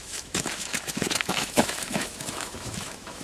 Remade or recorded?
remade